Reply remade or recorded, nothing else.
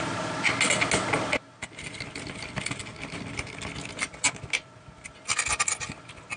recorded